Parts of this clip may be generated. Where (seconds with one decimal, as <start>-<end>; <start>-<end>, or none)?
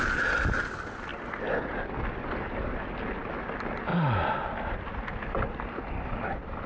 none